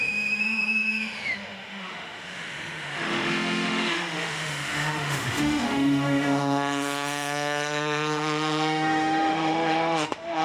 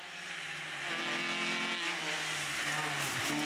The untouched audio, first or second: second